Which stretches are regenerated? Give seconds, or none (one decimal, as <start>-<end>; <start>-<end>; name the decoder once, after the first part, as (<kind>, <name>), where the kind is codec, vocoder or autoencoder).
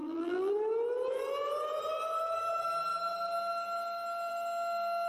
0.0-0.5 (vocoder, BigVGAN v2)